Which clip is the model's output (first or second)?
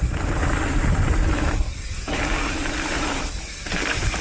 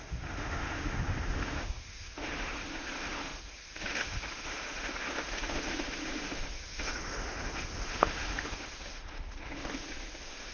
second